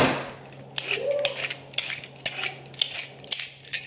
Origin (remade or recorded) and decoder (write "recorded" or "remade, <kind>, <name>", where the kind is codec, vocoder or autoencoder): recorded